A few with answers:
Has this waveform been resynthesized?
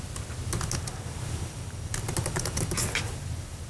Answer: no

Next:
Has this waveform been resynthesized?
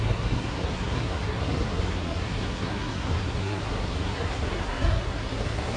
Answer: yes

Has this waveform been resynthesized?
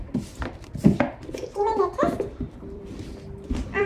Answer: yes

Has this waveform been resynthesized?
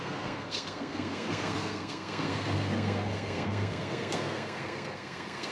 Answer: yes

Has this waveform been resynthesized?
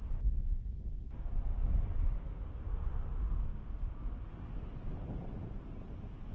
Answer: no